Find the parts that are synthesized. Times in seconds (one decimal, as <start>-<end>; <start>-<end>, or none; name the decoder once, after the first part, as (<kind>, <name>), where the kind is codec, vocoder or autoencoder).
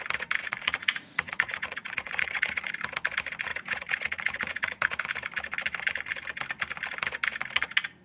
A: 0.4-2.7 (vocoder, Vocos); 3.5-5.0